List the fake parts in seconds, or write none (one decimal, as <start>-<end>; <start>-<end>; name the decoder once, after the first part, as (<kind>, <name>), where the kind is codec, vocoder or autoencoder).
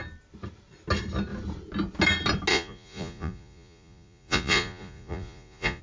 2.5-5.8 (vocoder, Vocos)